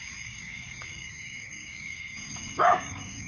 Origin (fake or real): fake